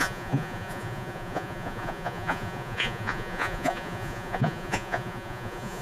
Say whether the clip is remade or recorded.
remade